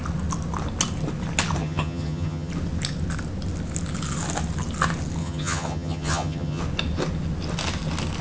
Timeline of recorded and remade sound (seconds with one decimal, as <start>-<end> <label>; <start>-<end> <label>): 0.0-1.6 recorded; 1.6-2.5 remade; 2.5-5.2 recorded; 5.2-6.6 remade; 6.6-8.2 recorded